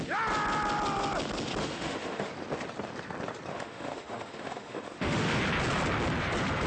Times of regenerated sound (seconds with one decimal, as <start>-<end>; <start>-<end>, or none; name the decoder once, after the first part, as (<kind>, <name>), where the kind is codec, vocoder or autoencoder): 1.6-2.3 (autoencoder, DAC-VAE); 3.5-5.4